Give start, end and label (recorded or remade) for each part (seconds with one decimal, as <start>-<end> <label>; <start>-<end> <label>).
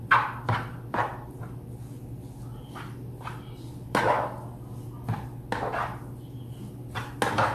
0.0-7.5 recorded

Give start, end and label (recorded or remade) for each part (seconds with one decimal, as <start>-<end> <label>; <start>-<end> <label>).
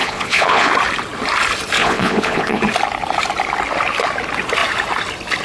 0.0-0.7 remade; 0.7-1.8 recorded; 1.8-2.6 remade; 2.6-5.4 recorded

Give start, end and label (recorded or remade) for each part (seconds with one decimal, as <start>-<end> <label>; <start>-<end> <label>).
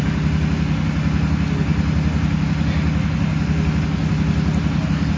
0.0-5.2 recorded